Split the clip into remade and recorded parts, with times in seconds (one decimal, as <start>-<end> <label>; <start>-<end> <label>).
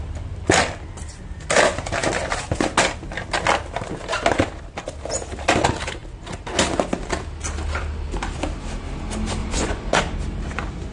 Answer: 0.0-9.4 recorded; 9.4-10.0 remade; 10.0-10.9 recorded